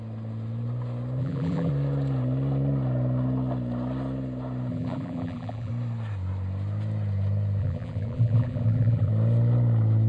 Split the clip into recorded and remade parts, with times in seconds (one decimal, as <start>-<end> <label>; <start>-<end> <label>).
0.0-1.2 recorded; 1.2-1.7 remade; 1.7-4.7 recorded; 4.7-5.7 remade; 5.7-7.6 recorded; 7.6-9.1 remade; 9.1-10.1 recorded